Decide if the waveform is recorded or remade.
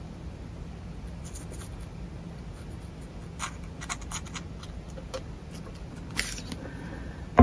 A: recorded